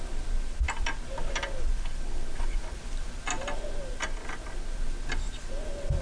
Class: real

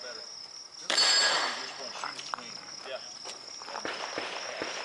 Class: real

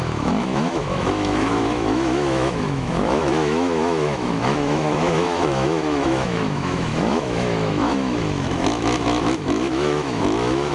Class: fake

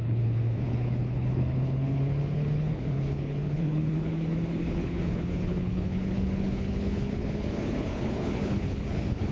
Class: fake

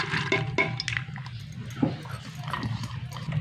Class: real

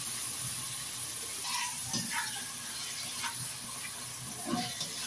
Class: real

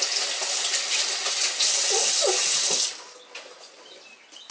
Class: real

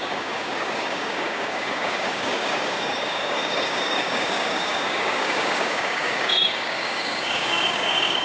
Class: fake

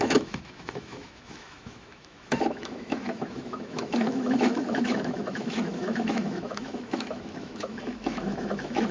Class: fake